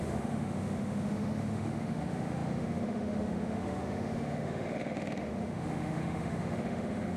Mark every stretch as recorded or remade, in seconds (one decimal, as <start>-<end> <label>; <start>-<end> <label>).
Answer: 0.0-7.2 remade